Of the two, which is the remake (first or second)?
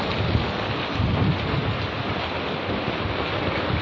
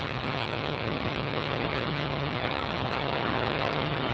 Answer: second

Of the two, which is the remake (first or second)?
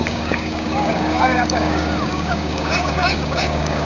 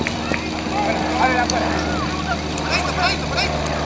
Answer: first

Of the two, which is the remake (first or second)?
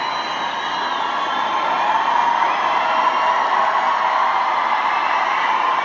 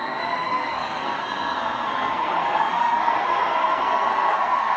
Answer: second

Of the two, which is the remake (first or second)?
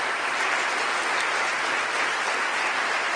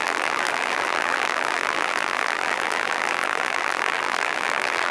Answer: second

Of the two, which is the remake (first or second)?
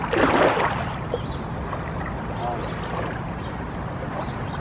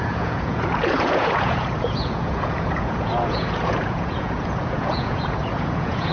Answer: second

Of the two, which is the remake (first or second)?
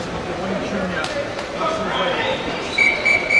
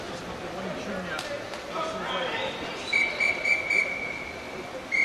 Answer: first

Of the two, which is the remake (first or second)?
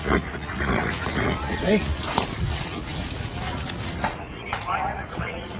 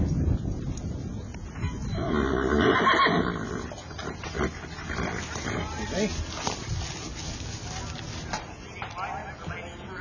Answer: first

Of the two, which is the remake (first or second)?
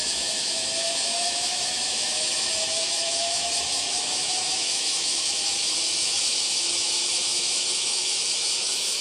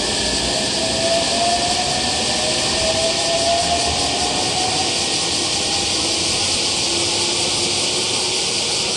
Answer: first